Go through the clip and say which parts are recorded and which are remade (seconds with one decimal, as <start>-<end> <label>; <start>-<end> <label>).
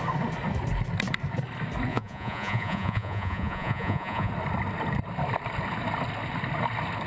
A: 0.0-1.9 recorded; 1.9-4.3 remade; 4.3-7.1 recorded